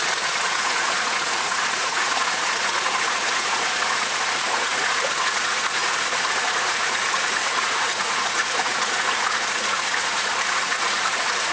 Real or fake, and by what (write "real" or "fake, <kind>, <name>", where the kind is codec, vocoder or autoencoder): fake, vocoder, Vocos